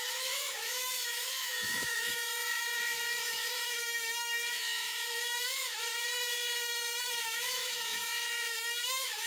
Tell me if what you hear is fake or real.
fake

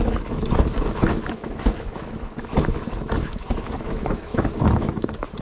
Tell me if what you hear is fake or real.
fake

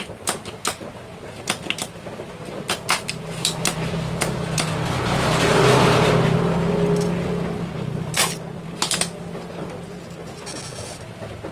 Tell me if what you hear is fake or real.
real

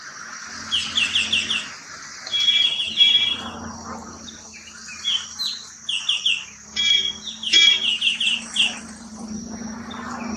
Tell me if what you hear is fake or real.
real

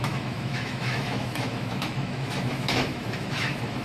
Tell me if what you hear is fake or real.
fake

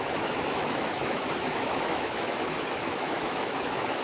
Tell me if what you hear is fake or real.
fake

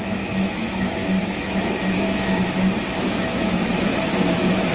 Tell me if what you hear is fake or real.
fake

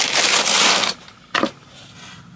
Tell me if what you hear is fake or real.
real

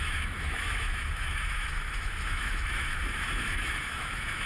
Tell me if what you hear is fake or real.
fake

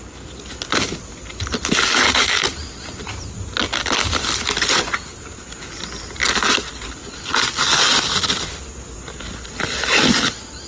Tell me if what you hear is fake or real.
real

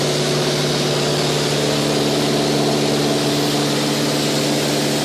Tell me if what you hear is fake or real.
real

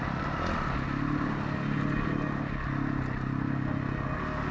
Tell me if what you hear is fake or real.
real